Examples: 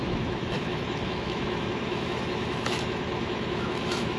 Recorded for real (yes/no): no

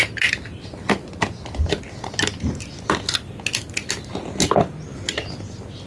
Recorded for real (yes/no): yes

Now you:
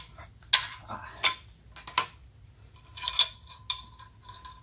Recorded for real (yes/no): yes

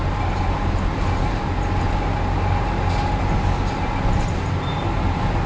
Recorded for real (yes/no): yes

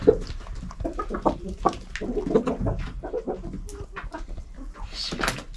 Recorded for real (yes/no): yes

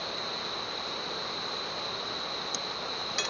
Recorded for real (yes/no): yes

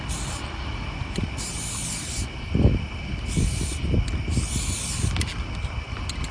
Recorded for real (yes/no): yes